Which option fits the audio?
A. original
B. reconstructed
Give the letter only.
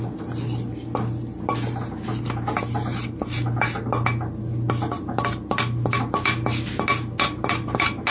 A